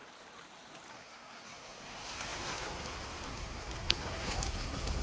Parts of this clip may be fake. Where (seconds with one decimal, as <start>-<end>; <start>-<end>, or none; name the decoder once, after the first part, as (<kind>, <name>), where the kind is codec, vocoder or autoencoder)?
0.9-5.0 (codec, SNAC)